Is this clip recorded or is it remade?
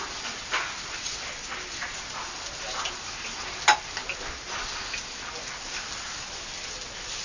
recorded